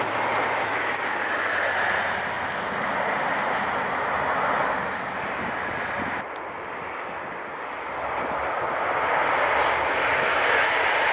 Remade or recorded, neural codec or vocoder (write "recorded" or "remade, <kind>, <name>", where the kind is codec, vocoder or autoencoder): recorded